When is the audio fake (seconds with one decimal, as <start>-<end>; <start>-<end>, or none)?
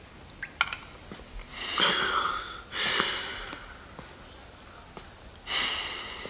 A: none